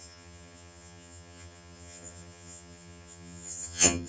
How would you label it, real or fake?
fake